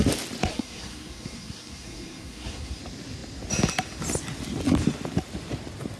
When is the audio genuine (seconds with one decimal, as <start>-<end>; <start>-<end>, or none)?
0.0-0.5; 2.8-6.0